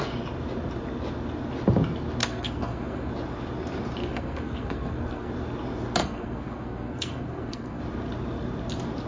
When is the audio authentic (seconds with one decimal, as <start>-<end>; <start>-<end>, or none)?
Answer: 0.0-2.2; 3.1-4.0; 5.3-6.0; 7.8-9.1